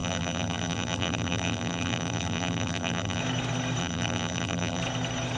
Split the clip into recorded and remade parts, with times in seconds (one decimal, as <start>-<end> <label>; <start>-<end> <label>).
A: 0.0-3.2 remade; 3.2-3.8 recorded; 3.8-4.8 remade; 4.8-5.4 recorded

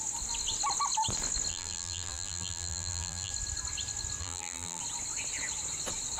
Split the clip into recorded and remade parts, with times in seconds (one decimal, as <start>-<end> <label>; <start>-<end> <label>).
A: 0.0-1.5 recorded; 1.5-3.3 remade; 3.3-4.2 recorded; 4.2-4.8 remade; 4.8-6.2 recorded

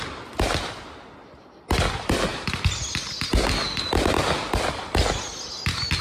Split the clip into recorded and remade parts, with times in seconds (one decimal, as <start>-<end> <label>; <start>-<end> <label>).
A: 0.0-6.0 recorded

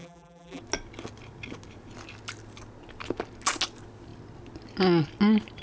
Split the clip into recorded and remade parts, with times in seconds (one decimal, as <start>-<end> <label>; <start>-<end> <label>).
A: 0.0-0.6 remade; 0.6-5.6 recorded